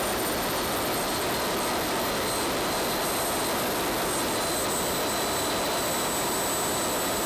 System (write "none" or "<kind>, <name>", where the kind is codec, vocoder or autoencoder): none